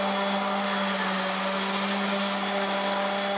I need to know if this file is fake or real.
real